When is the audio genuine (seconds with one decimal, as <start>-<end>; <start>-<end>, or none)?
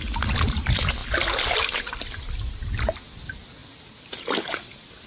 0.0-5.1